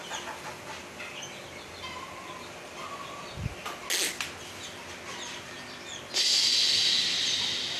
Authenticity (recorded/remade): recorded